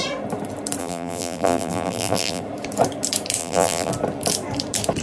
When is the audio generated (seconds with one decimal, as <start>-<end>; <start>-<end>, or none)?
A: 0.8-2.4; 3.4-3.9